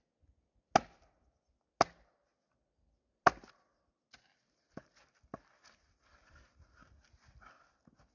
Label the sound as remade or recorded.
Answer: recorded